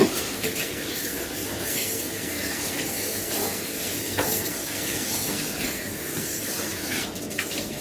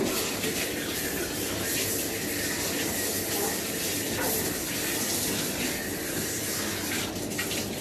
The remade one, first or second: first